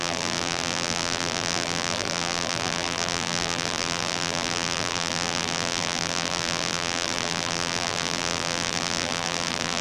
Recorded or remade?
remade